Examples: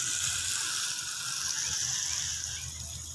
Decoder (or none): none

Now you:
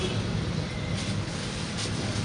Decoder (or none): vocoder, BigVGAN v2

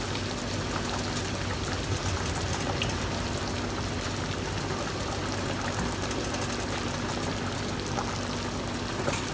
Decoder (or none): none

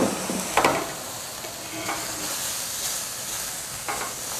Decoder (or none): none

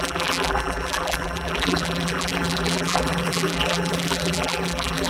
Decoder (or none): vocoder, BigVGAN v2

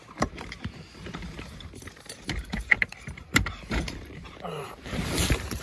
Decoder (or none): vocoder, BigVGAN v2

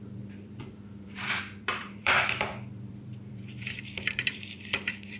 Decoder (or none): vocoder, BigVGAN v2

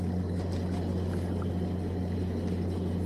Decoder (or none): none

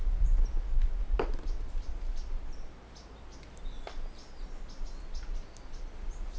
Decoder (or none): none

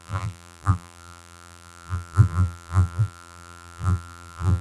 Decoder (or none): vocoder, BigVGAN v2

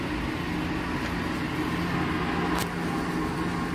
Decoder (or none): none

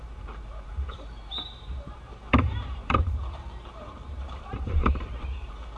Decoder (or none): vocoder, BigVGAN v2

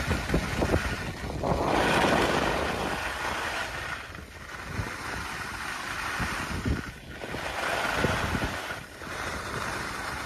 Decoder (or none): none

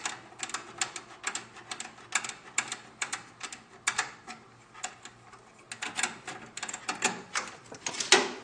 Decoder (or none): none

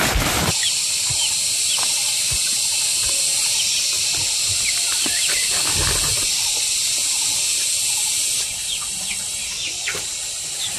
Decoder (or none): none